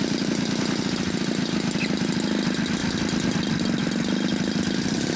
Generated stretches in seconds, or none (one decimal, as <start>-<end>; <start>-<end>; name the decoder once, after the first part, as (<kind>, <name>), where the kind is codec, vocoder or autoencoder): none

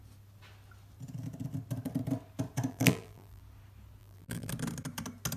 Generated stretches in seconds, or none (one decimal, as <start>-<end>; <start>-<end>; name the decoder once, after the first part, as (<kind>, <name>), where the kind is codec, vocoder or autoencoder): 2.7-3.4 (vocoder, BigVGAN v2); 4.0-4.5

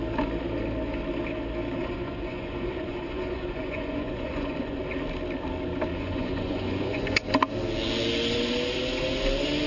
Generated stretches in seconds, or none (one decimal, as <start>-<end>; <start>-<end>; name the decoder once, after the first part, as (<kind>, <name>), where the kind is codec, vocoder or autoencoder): 1.8-4.8 (vocoder, Vocos); 5.9-7.3

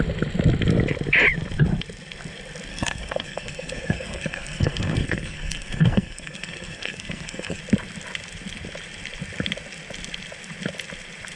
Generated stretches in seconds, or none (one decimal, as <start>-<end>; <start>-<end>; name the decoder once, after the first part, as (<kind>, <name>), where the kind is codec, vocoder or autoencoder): 2.7-7.6 (codec, SNAC)

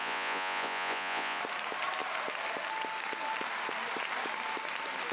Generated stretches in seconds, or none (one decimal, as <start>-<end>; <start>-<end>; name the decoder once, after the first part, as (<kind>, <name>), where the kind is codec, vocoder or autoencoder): 0.0-1.4 (vocoder, Vocos)